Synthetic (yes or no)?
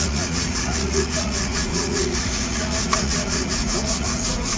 yes